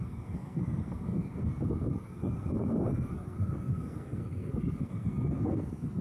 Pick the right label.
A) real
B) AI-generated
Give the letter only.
B